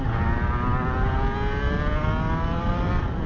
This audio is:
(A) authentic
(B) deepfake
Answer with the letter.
A